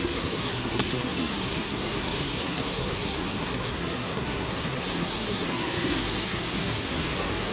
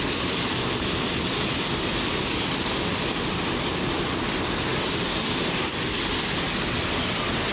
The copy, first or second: first